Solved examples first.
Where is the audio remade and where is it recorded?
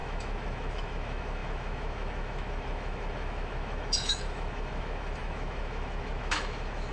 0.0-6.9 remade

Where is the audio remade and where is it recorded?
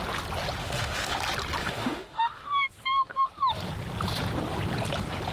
0.0-0.6 recorded; 0.6-1.2 remade; 1.2-1.6 recorded; 1.6-3.3 remade; 3.3-5.3 recorded